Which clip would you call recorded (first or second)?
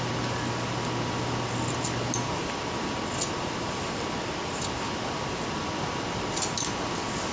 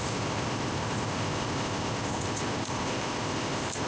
first